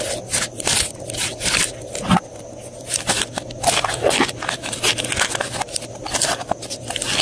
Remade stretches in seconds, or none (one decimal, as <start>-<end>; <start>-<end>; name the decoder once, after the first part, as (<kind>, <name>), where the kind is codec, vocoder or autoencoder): none